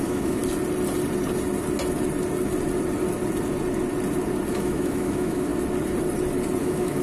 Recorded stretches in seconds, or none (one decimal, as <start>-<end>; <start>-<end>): 0.4-4.5; 5.5-6.6